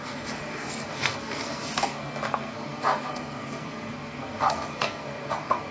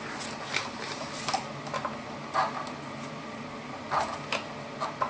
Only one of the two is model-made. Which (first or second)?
first